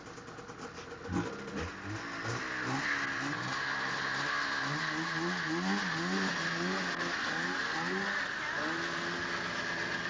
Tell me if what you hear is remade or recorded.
recorded